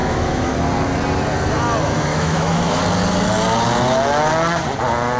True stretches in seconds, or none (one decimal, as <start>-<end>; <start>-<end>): 0.5-2.1; 2.8-5.2